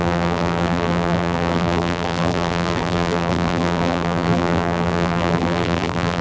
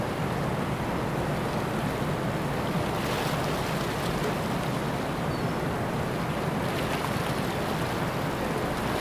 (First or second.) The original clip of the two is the second